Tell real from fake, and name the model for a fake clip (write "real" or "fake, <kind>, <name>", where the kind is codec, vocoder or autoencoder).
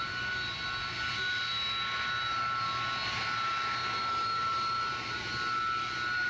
real